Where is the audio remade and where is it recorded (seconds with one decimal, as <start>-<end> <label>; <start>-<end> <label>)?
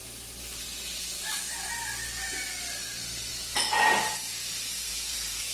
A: 0.0-3.3 recorded; 3.3-4.4 remade; 4.4-4.9 recorded; 4.9-5.5 remade